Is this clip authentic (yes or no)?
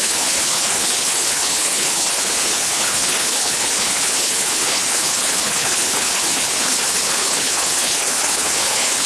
no